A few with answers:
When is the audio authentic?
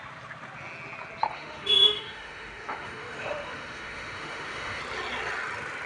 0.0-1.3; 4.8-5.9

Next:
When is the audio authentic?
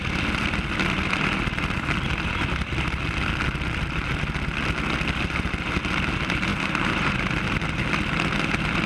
0.0-6.5; 7.2-8.9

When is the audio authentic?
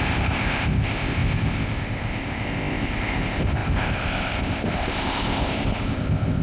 none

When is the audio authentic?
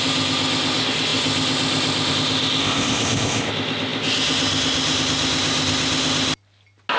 0.0-2.6; 3.5-7.0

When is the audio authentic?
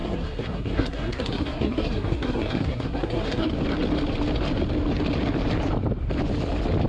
3.5-6.9